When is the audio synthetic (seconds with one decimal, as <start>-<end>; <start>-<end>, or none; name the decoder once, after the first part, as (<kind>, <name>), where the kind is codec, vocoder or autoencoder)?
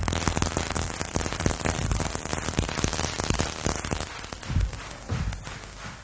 none